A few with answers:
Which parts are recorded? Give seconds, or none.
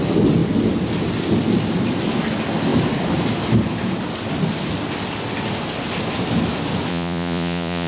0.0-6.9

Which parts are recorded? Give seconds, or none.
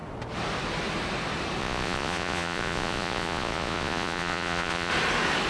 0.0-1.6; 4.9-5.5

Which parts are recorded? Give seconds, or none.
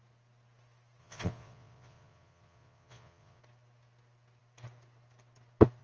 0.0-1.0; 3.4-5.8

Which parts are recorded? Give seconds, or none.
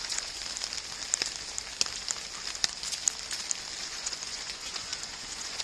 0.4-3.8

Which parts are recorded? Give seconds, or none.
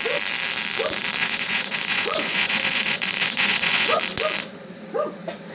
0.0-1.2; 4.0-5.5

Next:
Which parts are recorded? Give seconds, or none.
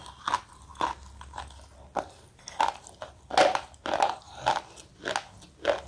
0.0-5.9